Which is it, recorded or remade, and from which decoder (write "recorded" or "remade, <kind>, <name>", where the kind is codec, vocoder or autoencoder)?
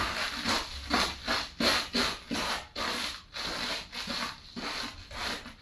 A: recorded